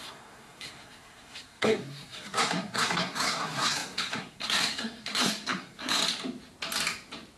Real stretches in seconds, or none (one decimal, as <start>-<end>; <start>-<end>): 6.0-7.4